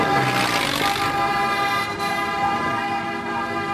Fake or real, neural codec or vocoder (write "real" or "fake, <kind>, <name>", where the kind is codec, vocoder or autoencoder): real